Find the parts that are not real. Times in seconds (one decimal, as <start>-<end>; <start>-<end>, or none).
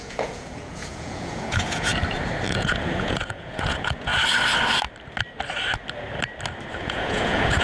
0.0-1.9; 2.5-4.1; 6.8-7.6